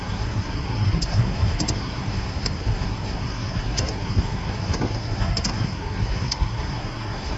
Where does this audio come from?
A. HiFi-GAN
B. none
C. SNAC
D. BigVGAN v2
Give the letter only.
C